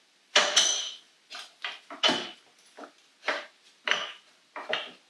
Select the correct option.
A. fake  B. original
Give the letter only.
B